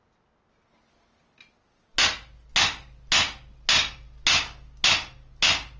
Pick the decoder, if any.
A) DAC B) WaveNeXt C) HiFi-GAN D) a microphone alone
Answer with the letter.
D